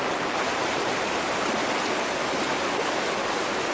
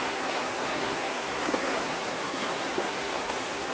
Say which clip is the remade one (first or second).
second